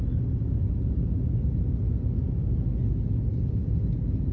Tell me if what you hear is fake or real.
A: real